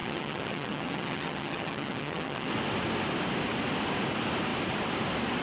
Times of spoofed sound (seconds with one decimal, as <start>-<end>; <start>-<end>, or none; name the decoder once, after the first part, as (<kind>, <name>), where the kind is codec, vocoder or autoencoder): 0.0-2.5 (vocoder, HiFi-GAN)